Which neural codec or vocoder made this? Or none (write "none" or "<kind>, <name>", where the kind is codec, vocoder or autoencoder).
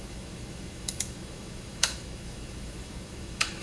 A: autoencoder, DAC-VAE